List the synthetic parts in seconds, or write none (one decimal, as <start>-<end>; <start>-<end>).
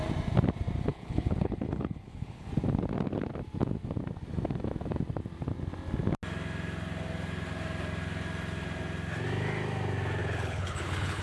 0.9-2.5; 10.2-11.2